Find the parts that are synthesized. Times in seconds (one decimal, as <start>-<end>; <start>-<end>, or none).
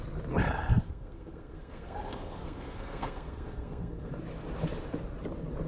0.7-4.1